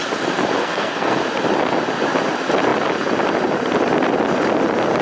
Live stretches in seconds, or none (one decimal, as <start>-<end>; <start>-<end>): 0.0-0.6; 1.2-5.0